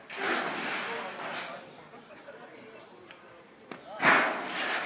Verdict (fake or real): real